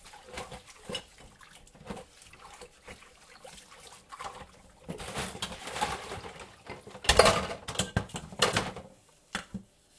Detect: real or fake real